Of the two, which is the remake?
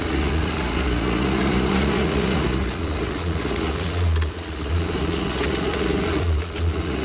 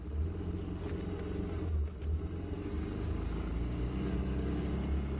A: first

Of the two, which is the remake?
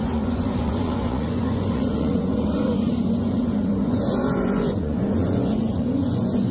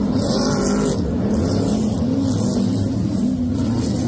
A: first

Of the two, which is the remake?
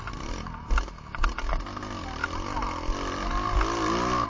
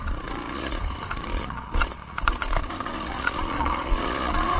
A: second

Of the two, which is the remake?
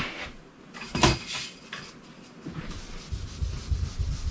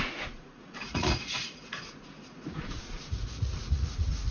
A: second